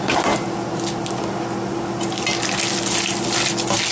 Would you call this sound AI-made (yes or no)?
no